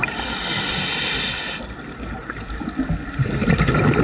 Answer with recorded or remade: recorded